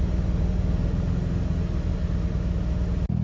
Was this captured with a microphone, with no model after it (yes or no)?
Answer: yes